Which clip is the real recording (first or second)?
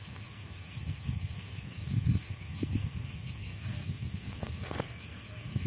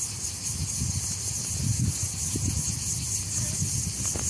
second